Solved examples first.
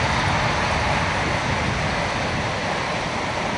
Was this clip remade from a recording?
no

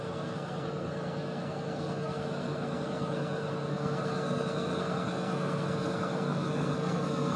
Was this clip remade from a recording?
yes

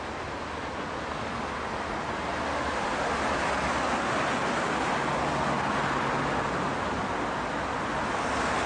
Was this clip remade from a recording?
no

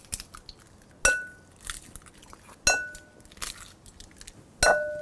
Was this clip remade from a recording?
no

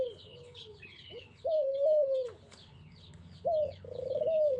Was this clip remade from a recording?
yes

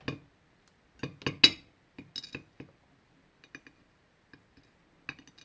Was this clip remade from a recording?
no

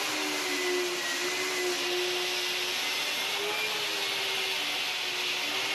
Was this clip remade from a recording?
no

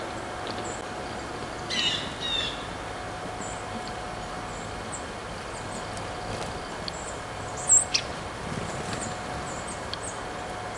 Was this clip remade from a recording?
no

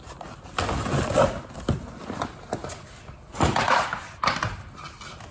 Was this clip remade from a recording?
no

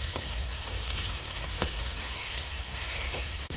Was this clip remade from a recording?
yes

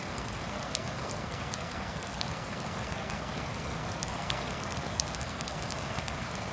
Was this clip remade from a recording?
yes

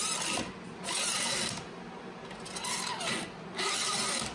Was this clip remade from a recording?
no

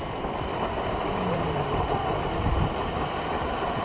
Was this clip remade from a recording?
yes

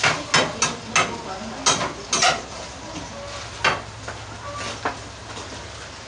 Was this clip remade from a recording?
no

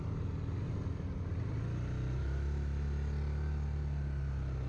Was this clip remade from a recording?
no